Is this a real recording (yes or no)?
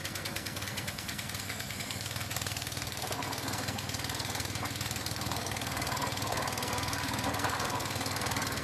no